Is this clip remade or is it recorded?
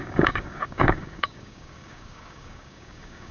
remade